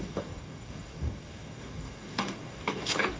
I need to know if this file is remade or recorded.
remade